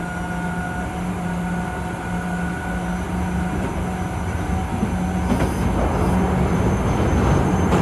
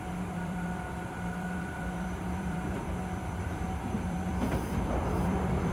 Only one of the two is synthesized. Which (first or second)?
second